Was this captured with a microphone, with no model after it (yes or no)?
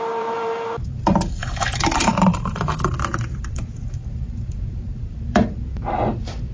no